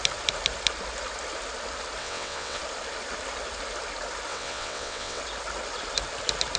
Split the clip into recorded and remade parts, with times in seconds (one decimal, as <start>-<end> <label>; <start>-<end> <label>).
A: 0.0-2.0 recorded; 2.0-2.6 remade; 2.6-4.3 recorded; 4.3-5.2 remade; 5.2-6.6 recorded